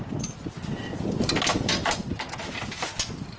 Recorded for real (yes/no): yes